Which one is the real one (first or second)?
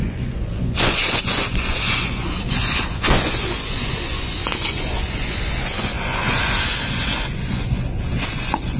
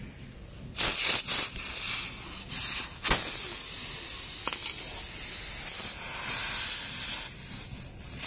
second